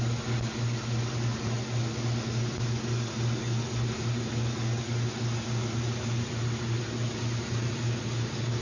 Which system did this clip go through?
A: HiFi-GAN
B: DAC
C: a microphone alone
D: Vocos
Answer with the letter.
C